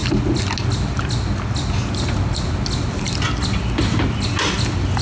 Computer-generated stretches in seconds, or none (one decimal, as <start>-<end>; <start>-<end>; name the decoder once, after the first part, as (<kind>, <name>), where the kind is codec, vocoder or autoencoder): none